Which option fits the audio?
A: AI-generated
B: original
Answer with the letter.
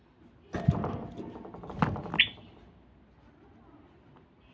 B